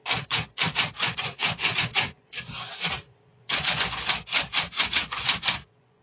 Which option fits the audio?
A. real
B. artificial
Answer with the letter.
B